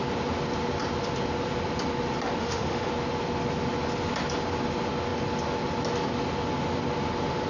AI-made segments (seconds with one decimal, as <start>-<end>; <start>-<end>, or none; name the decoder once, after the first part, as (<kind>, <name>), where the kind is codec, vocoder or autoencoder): 2.4-2.9 (autoencoder, DAC-VAE)